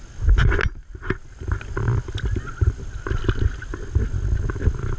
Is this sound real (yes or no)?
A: yes